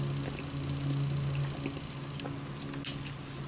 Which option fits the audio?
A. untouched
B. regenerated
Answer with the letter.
A